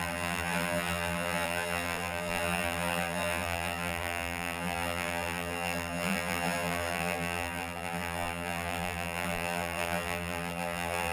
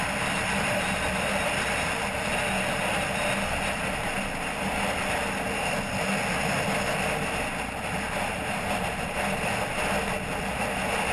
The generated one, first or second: first